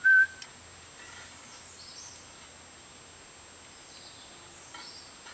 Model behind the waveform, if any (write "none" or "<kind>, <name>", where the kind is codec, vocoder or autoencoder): none